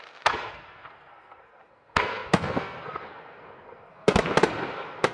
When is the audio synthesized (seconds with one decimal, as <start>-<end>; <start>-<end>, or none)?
0.0-5.1